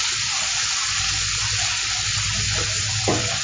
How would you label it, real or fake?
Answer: real